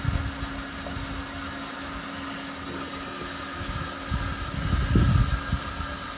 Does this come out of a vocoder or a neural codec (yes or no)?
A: no